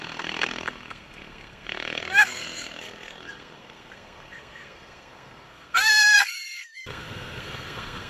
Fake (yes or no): yes